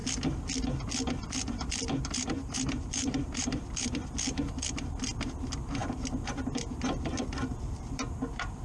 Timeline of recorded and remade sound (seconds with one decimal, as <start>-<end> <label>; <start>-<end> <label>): 0.0-2.4 recorded; 2.4-3.4 remade; 3.4-7.5 recorded; 7.5-8.6 remade